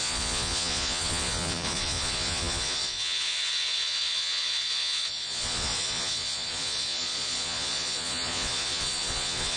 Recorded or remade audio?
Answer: remade